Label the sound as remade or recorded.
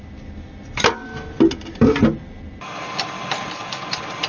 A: recorded